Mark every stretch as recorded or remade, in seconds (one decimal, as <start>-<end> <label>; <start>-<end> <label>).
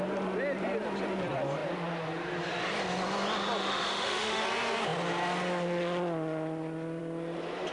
0.0-3.6 recorded; 3.6-4.4 remade; 4.4-7.7 recorded